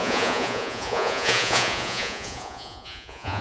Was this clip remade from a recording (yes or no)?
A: yes